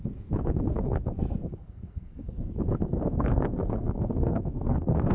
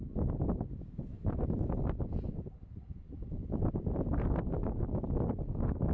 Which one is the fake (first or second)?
first